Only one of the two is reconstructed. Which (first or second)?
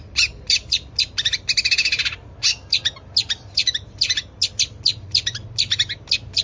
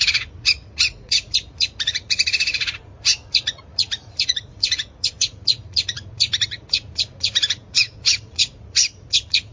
second